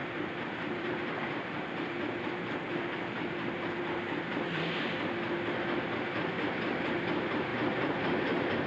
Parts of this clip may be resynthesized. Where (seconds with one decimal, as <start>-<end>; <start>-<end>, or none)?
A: 0.0-4.6; 7.5-8.7